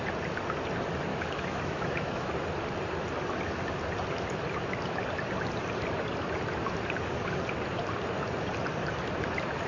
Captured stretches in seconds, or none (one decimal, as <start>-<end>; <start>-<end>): 0.0-1.1; 2.3-9.7